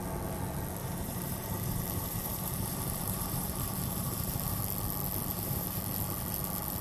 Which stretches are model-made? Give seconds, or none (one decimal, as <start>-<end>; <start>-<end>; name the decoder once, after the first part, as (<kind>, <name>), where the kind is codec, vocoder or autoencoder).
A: 0.8-4.6 (vocoder, BigVGAN v2); 5.3-5.8